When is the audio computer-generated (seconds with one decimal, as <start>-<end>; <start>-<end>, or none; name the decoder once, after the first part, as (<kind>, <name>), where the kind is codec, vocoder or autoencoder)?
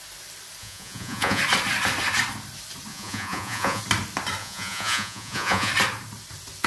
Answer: 0.6-1.4 (vocoder, Vocos); 2.9-3.8; 4.4-5.7